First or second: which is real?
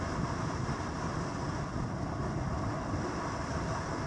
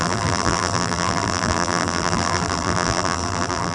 first